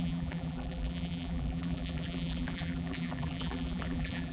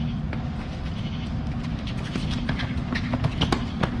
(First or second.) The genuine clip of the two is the second